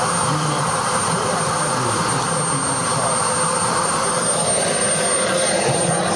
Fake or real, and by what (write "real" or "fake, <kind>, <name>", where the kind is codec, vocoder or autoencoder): real